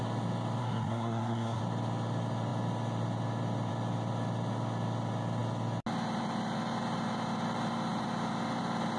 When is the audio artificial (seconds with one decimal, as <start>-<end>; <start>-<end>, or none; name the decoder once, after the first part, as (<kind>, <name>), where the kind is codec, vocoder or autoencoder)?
0.6-1.6 (codec, SNAC)